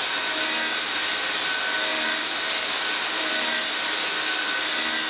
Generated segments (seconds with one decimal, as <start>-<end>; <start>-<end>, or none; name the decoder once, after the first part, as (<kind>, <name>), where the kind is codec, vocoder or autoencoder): 1.9-3.7 (vocoder, BigVGAN v2)